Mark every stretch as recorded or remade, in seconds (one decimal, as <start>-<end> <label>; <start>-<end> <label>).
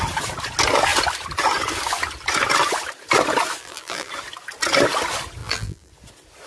0.0-3.6 recorded; 3.6-4.1 remade; 4.1-5.4 recorded; 5.4-5.9 remade; 5.9-6.5 recorded